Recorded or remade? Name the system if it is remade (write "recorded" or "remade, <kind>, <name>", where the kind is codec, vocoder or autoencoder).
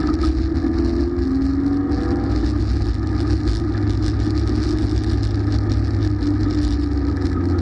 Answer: recorded